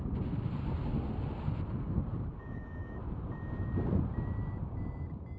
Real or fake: real